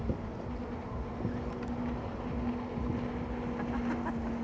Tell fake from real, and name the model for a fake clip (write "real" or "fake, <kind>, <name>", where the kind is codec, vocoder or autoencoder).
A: real